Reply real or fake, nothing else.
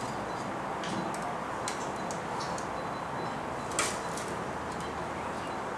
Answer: real